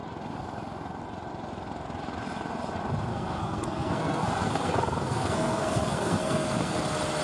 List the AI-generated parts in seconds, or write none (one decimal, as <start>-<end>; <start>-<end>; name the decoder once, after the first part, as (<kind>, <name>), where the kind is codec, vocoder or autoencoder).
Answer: 3.1-6.8 (codec, SNAC)